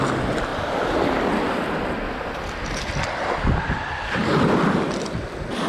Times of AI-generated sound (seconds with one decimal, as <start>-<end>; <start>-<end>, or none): none